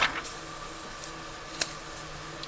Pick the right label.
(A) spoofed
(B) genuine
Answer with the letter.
B